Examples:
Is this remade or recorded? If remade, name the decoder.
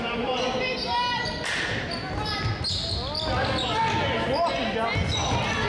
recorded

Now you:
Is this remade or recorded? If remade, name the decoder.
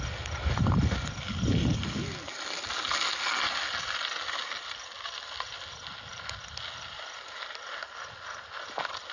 recorded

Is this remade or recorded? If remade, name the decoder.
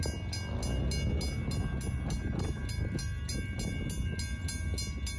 recorded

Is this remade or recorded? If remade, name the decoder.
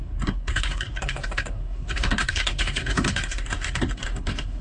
remade, codec, SNAC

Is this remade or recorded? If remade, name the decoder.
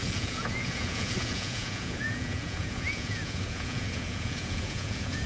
remade, vocoder, Vocos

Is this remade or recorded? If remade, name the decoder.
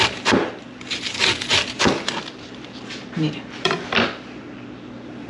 remade, vocoder, BigVGAN v2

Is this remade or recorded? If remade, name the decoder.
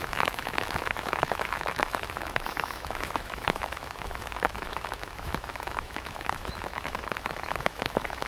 remade, autoencoder, DAC-VAE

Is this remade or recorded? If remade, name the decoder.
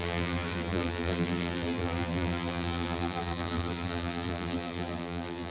remade, vocoder, BigVGAN v2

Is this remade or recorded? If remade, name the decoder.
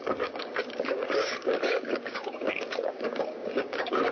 remade, codec, DAC